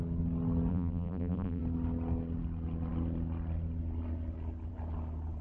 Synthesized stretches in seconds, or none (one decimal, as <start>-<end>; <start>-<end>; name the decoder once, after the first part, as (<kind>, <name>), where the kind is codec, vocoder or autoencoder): 0.7-1.6 (vocoder, BigVGAN v2)